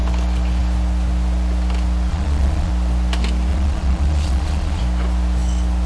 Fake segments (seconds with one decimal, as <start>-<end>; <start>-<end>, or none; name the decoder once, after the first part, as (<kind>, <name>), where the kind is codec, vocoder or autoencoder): 2.1-2.7 (vocoder, Vocos); 3.5-4.8